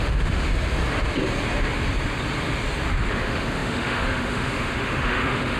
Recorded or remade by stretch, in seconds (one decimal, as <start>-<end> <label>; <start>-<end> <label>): 0.0-0.5 remade; 0.5-3.1 recorded; 3.1-5.6 remade